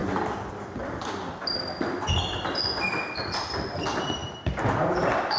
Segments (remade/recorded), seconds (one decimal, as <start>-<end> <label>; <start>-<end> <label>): 0.0-5.4 recorded

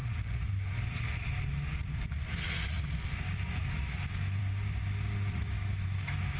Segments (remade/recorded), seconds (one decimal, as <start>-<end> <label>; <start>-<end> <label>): 0.0-3.5 recorded; 3.5-4.4 remade; 4.4-5.3 recorded; 5.3-6.4 remade

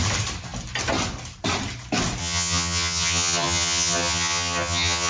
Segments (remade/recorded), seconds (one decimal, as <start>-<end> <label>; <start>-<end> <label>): 0.0-2.2 recorded; 2.2-5.1 remade

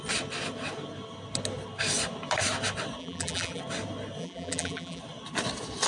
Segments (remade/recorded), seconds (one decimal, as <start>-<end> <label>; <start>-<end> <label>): 0.0-3.0 recorded; 3.0-3.6 remade; 3.6-4.2 recorded; 4.2-5.0 remade; 5.0-5.9 recorded

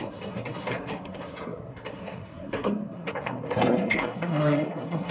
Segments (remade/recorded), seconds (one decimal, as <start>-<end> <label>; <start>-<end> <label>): 0.0-5.1 remade